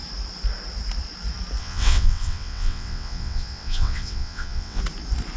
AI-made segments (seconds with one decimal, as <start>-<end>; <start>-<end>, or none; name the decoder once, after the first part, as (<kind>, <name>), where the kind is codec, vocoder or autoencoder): 1.6-4.8 (vocoder, WaveNeXt)